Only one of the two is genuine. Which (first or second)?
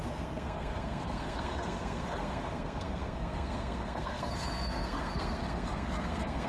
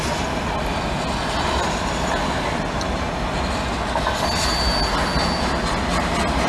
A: second